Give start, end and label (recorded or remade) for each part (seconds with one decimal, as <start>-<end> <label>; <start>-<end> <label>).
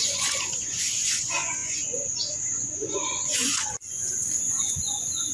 0.0-5.3 remade